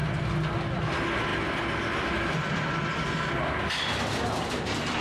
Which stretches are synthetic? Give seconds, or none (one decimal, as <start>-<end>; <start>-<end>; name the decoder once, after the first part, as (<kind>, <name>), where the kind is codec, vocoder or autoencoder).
none